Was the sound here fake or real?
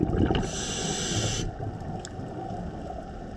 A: real